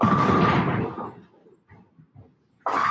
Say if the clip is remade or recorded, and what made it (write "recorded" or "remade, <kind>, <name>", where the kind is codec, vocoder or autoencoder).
recorded